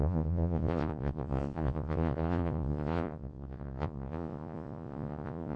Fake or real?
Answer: fake